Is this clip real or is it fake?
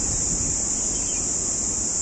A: real